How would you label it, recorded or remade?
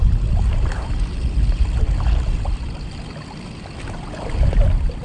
recorded